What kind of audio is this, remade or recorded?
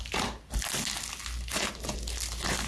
recorded